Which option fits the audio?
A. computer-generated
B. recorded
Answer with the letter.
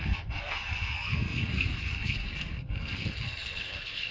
A